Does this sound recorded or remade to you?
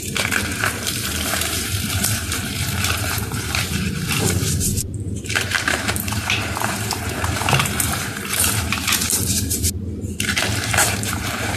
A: remade